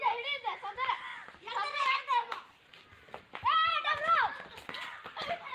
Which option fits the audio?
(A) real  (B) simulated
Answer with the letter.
A